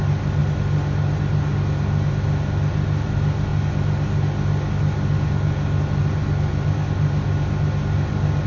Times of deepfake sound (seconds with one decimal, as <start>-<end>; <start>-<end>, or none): none